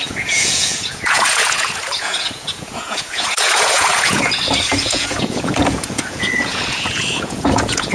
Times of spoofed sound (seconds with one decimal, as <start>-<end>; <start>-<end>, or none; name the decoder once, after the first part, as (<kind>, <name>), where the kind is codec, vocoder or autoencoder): 0.0-7.9 (vocoder, Vocos)